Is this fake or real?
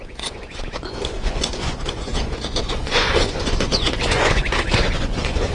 fake